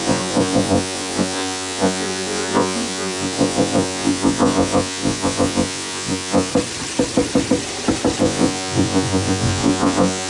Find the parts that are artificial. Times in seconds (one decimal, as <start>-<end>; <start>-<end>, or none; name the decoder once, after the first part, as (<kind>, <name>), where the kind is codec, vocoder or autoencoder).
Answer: 0.0-6.5 (vocoder, Vocos); 8.2-10.3